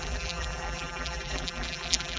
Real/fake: fake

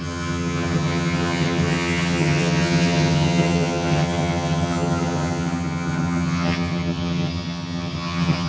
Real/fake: fake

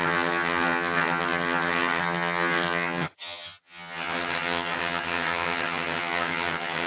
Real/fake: fake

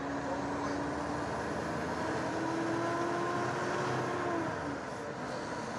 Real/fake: real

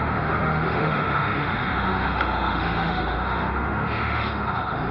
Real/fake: fake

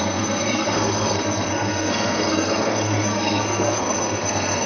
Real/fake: fake